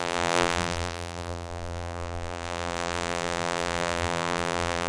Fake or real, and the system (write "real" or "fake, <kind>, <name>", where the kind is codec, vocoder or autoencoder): fake, vocoder, BigVGAN v2